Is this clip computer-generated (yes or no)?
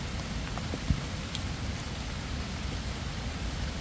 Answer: no